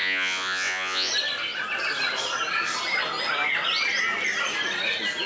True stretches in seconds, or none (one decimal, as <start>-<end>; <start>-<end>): 1.1-5.3